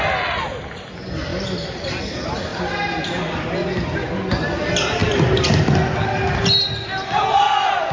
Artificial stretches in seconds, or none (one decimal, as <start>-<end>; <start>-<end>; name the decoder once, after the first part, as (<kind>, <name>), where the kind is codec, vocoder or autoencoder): none